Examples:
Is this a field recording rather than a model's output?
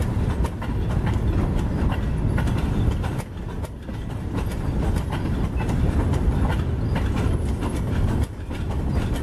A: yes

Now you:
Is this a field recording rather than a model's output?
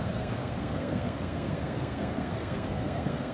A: no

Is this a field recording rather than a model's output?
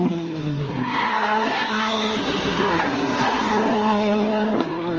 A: no